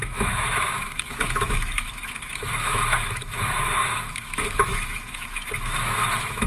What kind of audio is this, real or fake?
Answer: fake